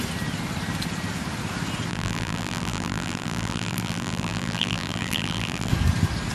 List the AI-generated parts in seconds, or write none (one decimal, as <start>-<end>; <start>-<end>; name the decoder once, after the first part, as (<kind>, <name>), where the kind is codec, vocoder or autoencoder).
1.9-5.7 (vocoder, BigVGAN v2)